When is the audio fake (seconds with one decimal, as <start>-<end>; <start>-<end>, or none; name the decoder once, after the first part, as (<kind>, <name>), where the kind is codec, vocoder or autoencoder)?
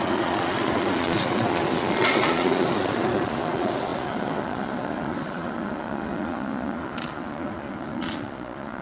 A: 0.0-8.8 (vocoder, Vocos)